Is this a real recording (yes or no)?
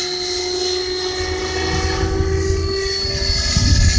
yes